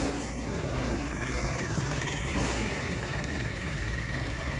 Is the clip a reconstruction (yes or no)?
yes